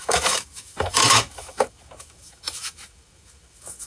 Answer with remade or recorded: remade